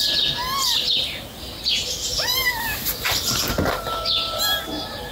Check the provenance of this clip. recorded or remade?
recorded